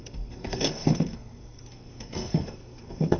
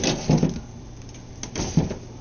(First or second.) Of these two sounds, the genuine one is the second